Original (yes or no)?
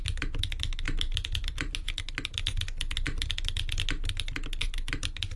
yes